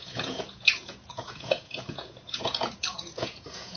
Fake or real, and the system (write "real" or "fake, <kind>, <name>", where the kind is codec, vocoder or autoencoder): fake, vocoder, Vocos